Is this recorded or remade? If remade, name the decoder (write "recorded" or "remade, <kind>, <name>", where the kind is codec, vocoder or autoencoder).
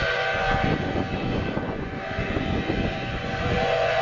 remade, vocoder, Vocos